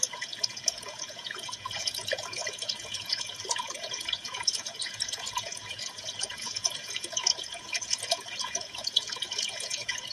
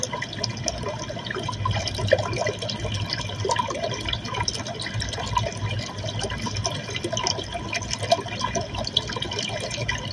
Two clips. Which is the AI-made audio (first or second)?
first